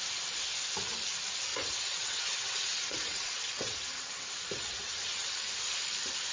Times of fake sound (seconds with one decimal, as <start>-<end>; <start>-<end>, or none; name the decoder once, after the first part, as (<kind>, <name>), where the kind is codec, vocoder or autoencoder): 1.5-5.3 (vocoder, WaveNeXt)